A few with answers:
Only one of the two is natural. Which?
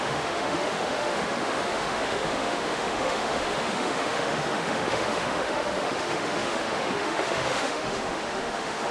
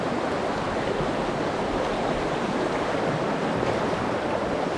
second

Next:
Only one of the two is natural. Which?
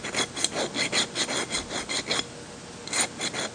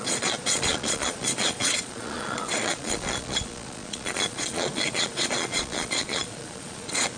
first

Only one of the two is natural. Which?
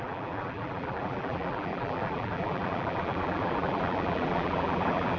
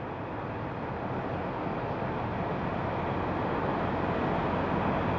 second